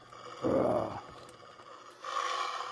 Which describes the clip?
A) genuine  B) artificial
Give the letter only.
A